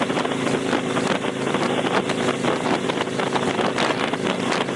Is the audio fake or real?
real